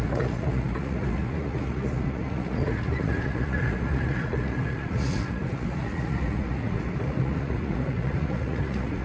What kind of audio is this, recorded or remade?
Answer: remade